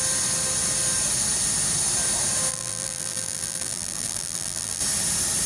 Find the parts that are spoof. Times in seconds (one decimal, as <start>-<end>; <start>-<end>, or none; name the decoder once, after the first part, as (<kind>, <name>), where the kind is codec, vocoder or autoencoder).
2.5-4.8 (vocoder, BigVGAN v2)